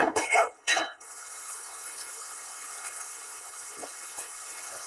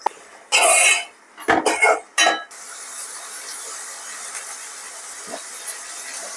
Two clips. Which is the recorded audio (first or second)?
second